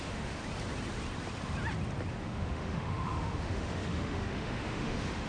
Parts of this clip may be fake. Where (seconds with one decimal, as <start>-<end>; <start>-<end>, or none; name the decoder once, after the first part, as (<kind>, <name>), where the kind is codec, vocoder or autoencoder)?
0.0-0.4 (autoencoder, DAC-VAE); 2.1-5.3